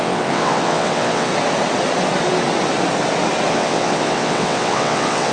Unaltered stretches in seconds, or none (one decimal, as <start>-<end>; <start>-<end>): 1.3-3.5